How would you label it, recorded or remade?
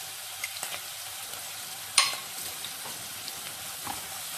remade